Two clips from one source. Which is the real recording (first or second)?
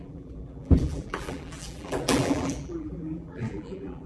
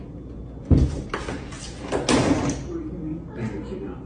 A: second